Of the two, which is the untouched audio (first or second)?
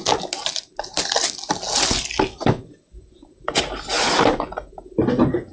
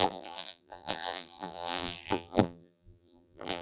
first